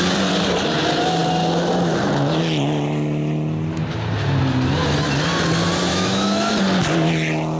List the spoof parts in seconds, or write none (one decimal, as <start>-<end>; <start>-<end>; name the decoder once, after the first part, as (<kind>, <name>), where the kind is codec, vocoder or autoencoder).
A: 5.9-6.5 (autoencoder, DAC-VAE)

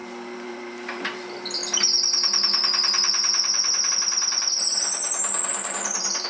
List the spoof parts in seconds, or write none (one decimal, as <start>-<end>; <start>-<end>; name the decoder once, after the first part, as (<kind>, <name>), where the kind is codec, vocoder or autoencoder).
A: 0.0-1.6 (vocoder, BigVGAN v2); 3.9-6.3

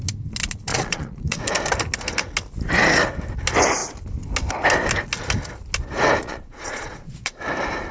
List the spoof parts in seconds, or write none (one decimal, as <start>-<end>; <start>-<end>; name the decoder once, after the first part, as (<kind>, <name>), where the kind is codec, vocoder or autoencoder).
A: 0.7-1.4 (vocoder, Vocos); 6.2-7.4